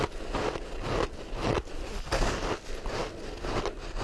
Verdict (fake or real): real